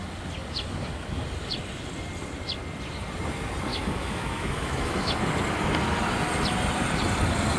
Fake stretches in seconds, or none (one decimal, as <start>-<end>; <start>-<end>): 3.7-5.2